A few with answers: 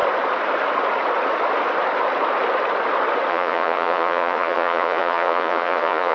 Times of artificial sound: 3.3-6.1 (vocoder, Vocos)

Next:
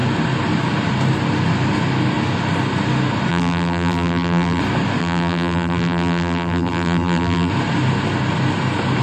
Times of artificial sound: 3.3-4.6 (vocoder, BigVGAN v2); 5.0-7.5